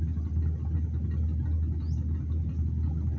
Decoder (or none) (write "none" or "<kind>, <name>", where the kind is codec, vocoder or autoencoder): none